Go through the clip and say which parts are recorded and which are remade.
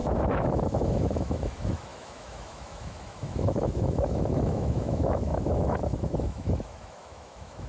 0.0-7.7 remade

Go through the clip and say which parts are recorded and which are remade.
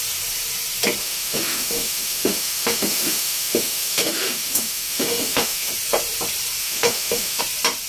0.0-1.0 recorded; 1.0-5.7 remade; 5.7-6.6 recorded; 6.6-7.4 remade; 7.4-7.9 recorded